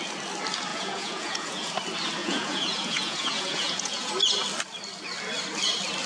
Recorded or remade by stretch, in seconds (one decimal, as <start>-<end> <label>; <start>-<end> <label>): 0.0-0.7 recorded; 0.7-1.7 remade; 1.7-2.2 recorded; 2.2-4.1 remade; 4.1-6.1 recorded

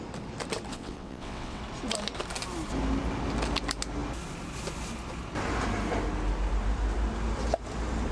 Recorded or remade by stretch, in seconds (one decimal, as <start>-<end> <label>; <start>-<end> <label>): 0.0-0.7 recorded; 0.7-1.6 remade; 1.6-8.1 recorded

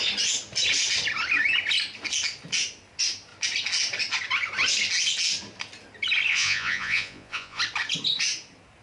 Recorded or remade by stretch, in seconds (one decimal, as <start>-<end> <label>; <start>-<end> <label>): 0.0-6.3 recorded; 6.3-7.6 remade; 7.6-8.8 recorded

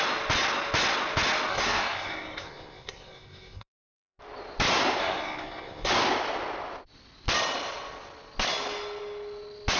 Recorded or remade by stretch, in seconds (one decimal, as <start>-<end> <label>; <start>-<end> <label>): 0.0-1.5 recorded; 1.5-4.2 remade; 4.2-5.0 recorded; 5.0-5.9 remade; 5.9-9.8 recorded

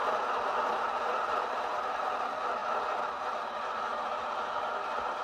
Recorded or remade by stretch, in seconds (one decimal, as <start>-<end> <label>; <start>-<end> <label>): 0.0-2.1 remade; 2.1-2.6 recorded; 2.6-5.2 remade

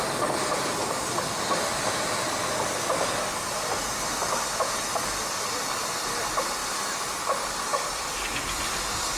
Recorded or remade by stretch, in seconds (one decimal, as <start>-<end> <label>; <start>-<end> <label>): 0.0-7.7 recorded; 7.7-9.2 remade

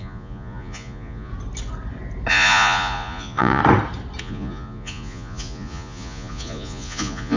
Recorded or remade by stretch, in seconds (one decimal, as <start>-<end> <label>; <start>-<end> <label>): 0.0-1.3 remade; 1.3-2.3 recorded; 2.3-3.6 remade; 3.6-4.2 recorded; 4.2-7.4 remade

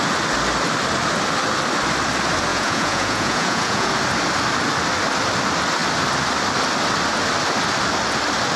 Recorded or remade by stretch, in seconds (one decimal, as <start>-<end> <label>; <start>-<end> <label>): 0.0-2.5 recorded; 2.5-3.9 remade; 3.9-8.6 recorded